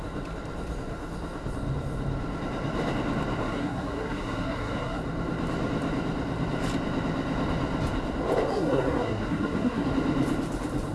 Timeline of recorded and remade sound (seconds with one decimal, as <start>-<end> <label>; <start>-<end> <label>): 0.0-3.4 recorded; 3.4-5.0 remade; 5.0-8.5 recorded; 8.5-9.9 remade; 9.9-10.9 recorded